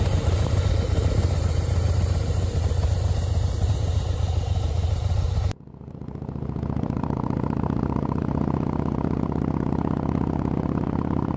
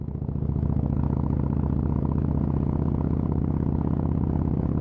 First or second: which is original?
second